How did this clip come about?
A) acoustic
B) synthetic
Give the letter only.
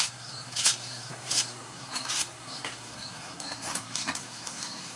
B